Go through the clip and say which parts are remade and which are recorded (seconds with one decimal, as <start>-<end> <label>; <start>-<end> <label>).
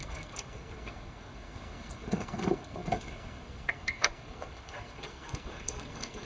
0.0-6.3 remade